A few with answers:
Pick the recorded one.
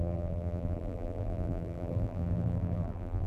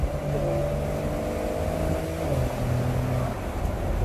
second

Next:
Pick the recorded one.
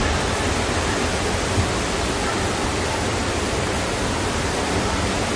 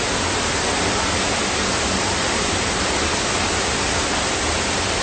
second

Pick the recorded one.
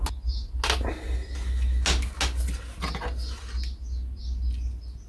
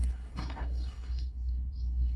first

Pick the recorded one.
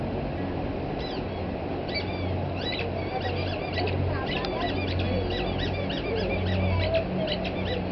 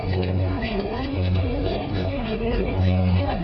first